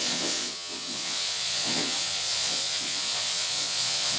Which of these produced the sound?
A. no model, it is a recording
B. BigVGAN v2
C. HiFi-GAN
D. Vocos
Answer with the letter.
D